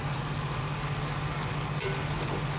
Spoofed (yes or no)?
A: no